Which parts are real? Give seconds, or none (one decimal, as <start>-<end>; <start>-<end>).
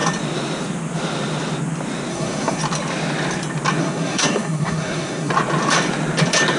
0.0-2.1; 2.6-3.8; 5.3-6.6